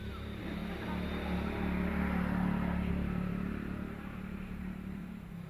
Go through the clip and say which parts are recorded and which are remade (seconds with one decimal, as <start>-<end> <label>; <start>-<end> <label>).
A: 0.0-0.6 remade; 0.6-2.9 recorded; 2.9-5.5 remade